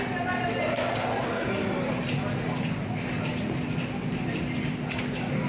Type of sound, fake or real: real